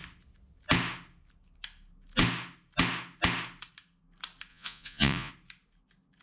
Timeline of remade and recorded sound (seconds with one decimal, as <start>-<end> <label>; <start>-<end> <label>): 0.0-4.5 recorded; 4.5-5.3 remade; 5.3-6.2 recorded